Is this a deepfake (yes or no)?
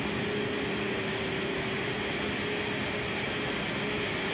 no